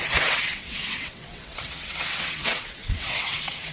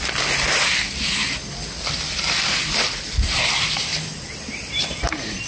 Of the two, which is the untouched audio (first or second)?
second